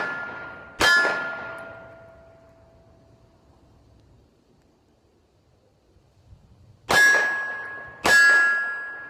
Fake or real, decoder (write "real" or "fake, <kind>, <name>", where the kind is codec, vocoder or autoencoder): real